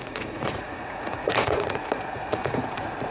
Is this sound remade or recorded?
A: remade